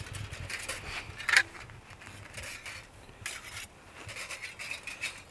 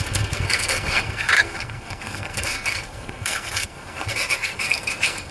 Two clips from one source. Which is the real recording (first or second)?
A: first